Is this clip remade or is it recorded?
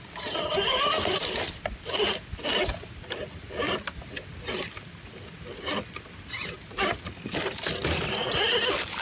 recorded